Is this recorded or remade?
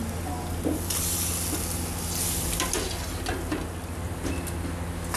recorded